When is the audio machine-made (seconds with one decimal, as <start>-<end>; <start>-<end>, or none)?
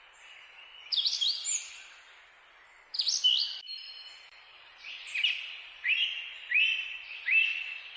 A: none